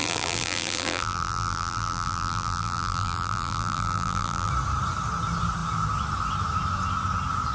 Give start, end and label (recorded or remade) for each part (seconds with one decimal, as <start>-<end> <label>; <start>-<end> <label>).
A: 0.0-4.5 remade; 4.5-7.5 recorded